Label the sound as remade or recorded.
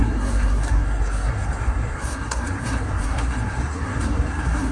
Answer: remade